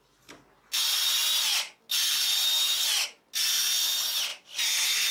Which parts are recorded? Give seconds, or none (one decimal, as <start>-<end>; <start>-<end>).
0.0-5.1